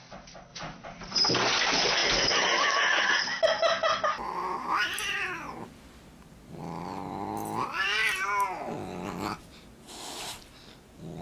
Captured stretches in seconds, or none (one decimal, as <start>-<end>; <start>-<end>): 0.0-0.5; 1.3-11.2